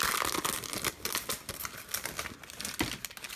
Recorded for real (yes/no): yes